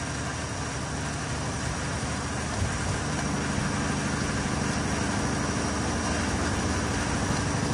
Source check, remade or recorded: recorded